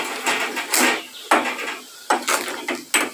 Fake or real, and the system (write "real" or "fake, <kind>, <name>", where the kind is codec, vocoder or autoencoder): real